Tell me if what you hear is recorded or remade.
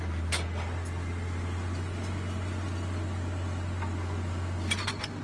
recorded